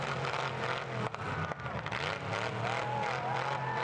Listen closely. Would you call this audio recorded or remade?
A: recorded